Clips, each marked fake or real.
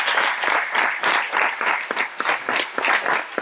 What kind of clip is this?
real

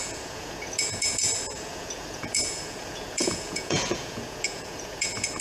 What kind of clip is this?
fake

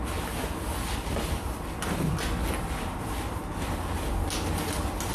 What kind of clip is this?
real